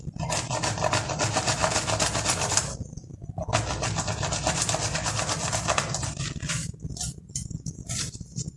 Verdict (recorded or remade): recorded